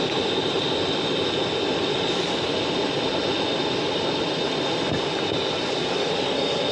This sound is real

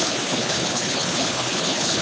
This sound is fake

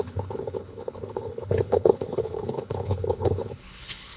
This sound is fake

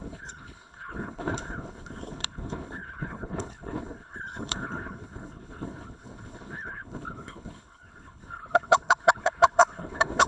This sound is fake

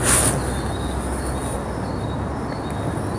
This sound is real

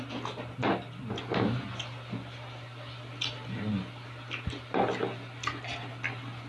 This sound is real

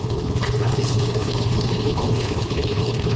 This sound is fake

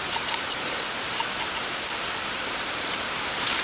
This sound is real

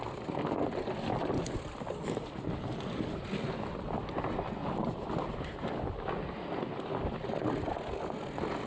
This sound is real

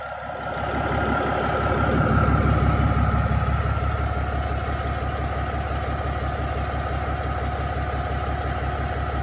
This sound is real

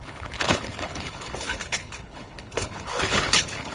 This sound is fake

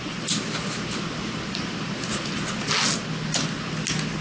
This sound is real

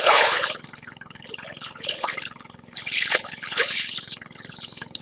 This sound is fake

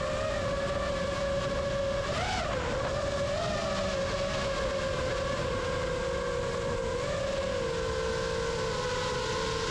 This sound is real